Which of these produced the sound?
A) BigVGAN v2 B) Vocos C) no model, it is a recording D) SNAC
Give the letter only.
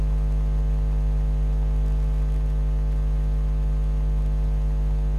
C